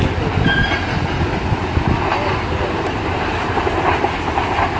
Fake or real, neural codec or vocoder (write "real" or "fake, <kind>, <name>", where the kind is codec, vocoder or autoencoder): real